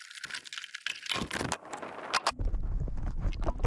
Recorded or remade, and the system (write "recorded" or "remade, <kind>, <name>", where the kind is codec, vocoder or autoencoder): recorded